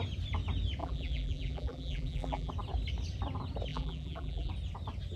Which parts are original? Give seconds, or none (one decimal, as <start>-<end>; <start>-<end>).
0.0-0.8; 2.5-3.7; 4.5-5.2